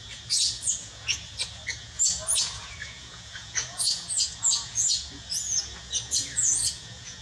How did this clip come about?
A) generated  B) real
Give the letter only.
A